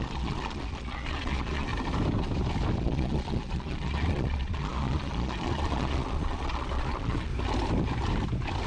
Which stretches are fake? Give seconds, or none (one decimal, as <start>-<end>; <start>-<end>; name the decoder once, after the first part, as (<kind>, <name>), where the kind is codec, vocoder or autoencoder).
0.0-1.7 (vocoder, Vocos); 2.8-7.3